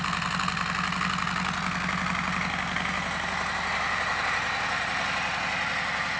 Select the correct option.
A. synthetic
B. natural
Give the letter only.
B